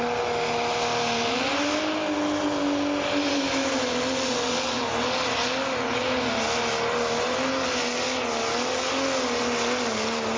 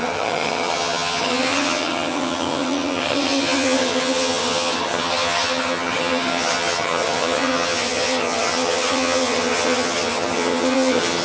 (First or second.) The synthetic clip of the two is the second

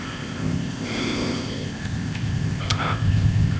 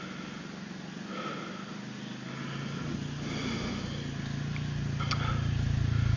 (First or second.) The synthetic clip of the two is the first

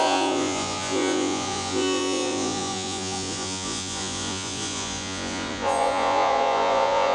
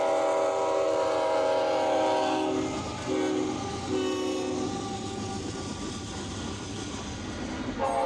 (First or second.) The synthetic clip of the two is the first